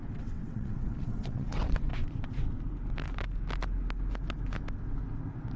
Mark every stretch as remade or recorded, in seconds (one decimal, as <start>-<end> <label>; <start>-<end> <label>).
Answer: 0.0-1.9 remade; 1.9-5.6 recorded